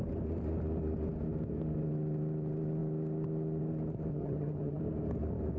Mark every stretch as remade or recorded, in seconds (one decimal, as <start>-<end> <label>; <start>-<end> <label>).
0.0-4.1 recorded; 4.1-4.8 remade; 4.8-5.6 recorded